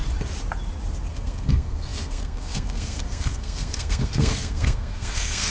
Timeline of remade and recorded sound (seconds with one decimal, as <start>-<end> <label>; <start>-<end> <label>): 0.0-1.1 recorded; 1.1-5.5 remade